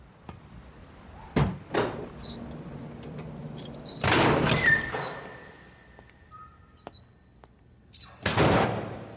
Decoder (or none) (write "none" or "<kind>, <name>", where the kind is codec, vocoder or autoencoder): none